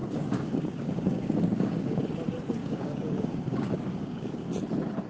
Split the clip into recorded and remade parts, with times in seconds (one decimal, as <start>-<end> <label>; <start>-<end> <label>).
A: 0.0-2.0 remade; 2.0-2.6 recorded; 2.6-4.5 remade; 4.5-5.1 recorded

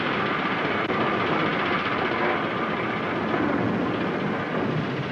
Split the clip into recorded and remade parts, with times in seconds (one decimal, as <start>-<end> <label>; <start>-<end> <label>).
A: 0.0-5.1 recorded

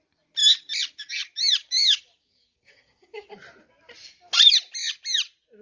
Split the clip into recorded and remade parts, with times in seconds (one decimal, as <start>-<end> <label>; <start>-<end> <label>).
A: 0.0-1.8 recorded; 1.8-3.3 remade; 3.3-5.6 recorded

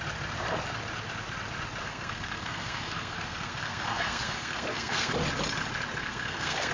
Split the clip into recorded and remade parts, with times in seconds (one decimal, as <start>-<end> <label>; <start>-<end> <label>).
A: 0.0-1.8 recorded; 1.8-5.1 remade; 5.1-6.0 recorded; 6.0-6.7 remade

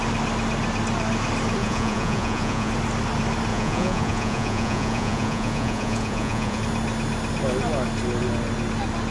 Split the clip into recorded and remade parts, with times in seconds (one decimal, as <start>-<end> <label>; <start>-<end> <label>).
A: 0.0-1.6 recorded; 1.6-2.7 remade; 2.7-3.5 recorded; 3.5-6.6 remade; 6.6-9.1 recorded

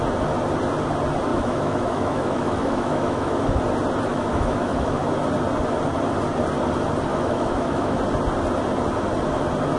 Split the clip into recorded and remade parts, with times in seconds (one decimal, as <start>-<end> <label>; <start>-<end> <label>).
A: 0.0-1.3 recorded; 1.3-3.6 remade; 3.6-4.1 recorded; 4.1-5.0 remade; 5.0-7.1 recorded; 7.1-8.0 remade; 8.0-9.8 recorded

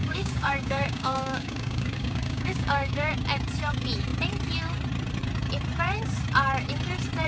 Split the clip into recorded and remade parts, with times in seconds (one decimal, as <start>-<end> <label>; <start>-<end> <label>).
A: 0.0-3.1 remade; 3.1-7.3 recorded